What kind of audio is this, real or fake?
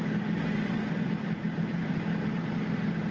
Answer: real